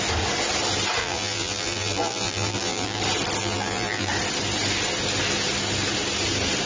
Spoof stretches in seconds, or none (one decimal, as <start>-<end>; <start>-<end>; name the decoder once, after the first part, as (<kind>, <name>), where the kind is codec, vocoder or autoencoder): 1.0-3.0 (vocoder, BigVGAN v2); 3.4-4.1